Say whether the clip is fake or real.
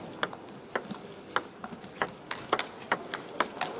real